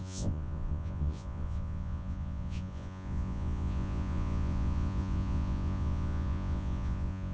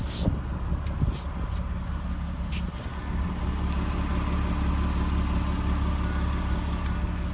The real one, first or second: second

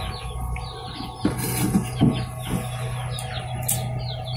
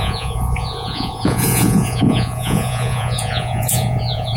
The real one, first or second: first